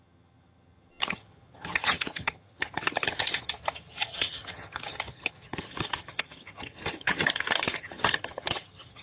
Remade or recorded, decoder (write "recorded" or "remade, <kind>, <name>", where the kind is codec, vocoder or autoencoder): remade, vocoder, HiFi-GAN